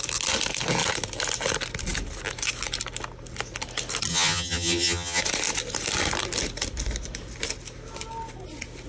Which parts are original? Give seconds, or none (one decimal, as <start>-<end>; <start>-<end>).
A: 0.0-4.1; 5.2-8.9